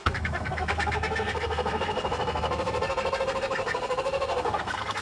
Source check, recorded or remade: remade